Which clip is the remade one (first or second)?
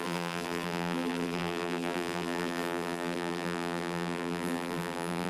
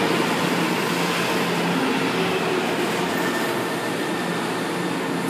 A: first